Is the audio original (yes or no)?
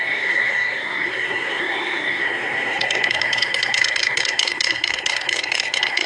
no